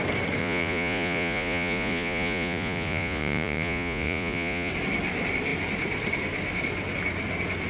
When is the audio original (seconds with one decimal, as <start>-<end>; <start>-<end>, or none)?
0.0-0.4; 4.7-7.7